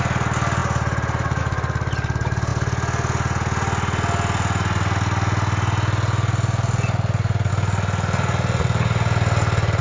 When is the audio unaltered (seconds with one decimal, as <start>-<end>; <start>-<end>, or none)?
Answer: 0.0-9.8